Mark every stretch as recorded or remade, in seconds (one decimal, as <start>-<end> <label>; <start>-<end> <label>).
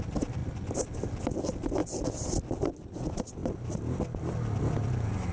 0.0-5.3 recorded